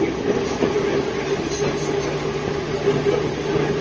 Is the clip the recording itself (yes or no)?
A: yes